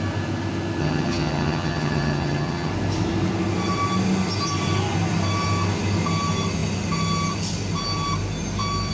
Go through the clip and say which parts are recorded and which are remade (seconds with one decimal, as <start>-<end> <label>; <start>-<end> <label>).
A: 0.0-0.8 recorded; 0.8-2.7 remade; 2.7-8.9 recorded